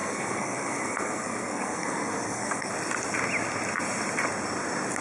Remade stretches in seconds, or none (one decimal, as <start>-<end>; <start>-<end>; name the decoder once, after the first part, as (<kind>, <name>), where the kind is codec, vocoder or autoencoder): 0.0-2.7 (codec, SNAC)